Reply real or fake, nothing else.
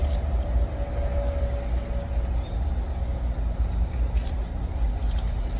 real